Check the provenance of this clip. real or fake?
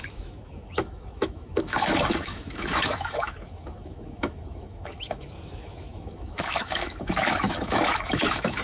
fake